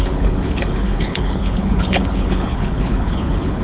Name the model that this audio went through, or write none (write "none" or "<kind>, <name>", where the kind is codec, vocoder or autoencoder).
codec, HILCodec